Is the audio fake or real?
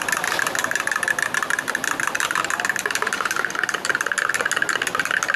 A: real